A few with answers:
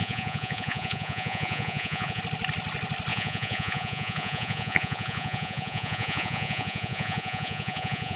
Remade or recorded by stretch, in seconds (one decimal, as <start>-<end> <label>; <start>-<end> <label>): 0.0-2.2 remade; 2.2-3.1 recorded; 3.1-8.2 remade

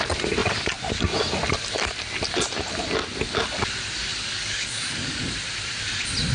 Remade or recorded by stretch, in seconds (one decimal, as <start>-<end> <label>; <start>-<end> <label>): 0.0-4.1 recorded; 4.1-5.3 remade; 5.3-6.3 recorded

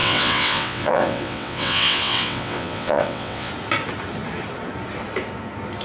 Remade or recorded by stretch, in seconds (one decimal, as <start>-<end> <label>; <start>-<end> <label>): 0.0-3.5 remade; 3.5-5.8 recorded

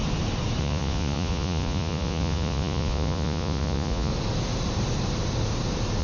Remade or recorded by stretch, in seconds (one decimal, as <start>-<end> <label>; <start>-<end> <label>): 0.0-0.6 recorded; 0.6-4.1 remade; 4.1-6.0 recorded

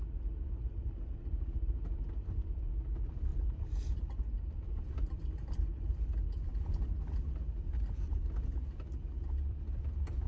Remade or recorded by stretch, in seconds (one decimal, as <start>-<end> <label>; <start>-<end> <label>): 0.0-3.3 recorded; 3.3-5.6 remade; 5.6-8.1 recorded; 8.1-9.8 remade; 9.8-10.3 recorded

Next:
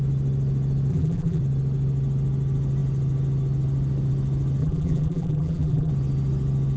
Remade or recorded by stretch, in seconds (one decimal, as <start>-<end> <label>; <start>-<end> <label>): 0.0-0.9 recorded; 0.9-1.4 remade; 1.4-4.6 recorded; 4.6-5.9 remade; 5.9-6.8 recorded

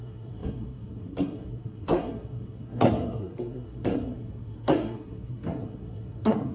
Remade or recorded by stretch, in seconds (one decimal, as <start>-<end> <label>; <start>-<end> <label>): 0.0-6.5 remade

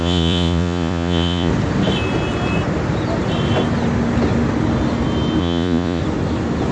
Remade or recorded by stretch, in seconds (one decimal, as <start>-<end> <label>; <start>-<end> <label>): 0.0-1.5 remade; 1.5-5.4 recorded; 5.4-6.0 remade; 6.0-6.7 recorded